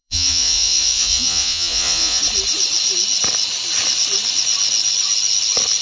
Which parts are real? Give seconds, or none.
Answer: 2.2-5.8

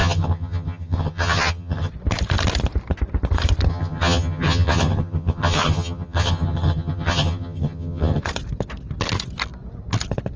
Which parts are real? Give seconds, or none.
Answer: 1.9-3.7; 8.2-10.4

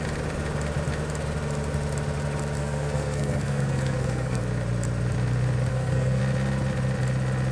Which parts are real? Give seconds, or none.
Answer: 0.0-2.6; 4.4-5.7; 6.2-7.5

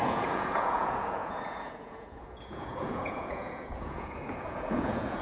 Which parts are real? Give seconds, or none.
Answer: none

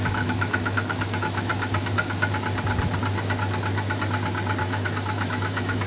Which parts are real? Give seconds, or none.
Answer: 1.5-4.6

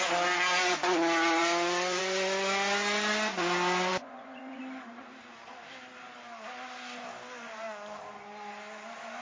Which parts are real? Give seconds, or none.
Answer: 0.0-3.9; 4.6-9.2

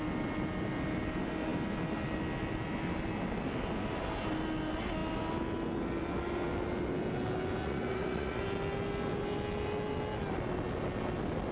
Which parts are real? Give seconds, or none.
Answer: 0.0-7.6; 8.4-11.5